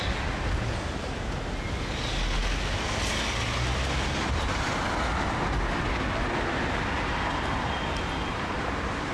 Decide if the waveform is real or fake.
real